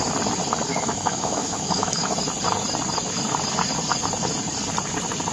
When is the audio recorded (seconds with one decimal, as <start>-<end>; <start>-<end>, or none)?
0.0-0.7; 2.1-5.3